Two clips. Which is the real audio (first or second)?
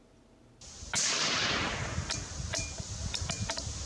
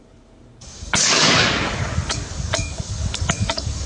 first